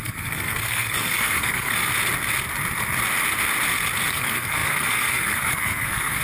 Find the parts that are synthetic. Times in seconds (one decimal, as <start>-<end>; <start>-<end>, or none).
0.0-1.9; 4.1-6.2